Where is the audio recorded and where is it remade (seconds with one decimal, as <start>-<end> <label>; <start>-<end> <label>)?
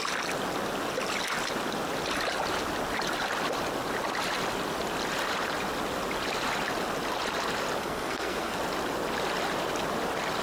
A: 0.0-7.8 recorded; 7.8-8.6 remade; 8.6-10.4 recorded